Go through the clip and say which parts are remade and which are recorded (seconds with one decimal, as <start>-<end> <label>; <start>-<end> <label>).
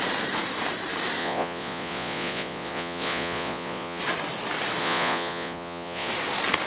0.0-1.2 recorded; 1.2-4.0 remade; 4.0-4.8 recorded; 4.8-6.1 remade; 6.1-6.7 recorded